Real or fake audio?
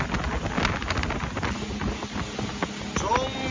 real